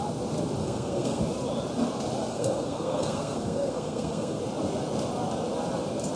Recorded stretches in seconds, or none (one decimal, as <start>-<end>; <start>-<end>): 0.0-0.6; 1.2-2.3; 4.4-6.2